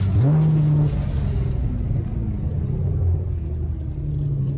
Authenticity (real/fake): real